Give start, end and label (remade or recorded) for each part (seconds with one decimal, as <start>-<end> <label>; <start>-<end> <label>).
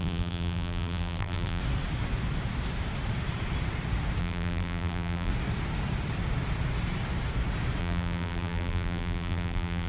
0.0-1.6 remade; 1.6-4.2 recorded; 4.2-5.3 remade; 5.3-7.8 recorded; 7.8-9.9 remade